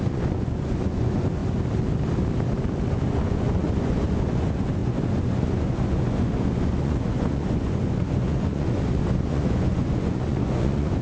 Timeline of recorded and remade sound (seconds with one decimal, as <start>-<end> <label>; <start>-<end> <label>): 0.0-1.4 remade; 1.4-2.9 recorded; 2.9-11.0 remade

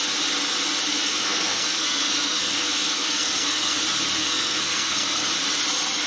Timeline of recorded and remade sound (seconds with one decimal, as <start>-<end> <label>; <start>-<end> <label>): 0.0-0.9 recorded; 0.9-3.8 remade; 3.8-4.2 recorded; 4.2-5.3 remade; 5.3-6.1 recorded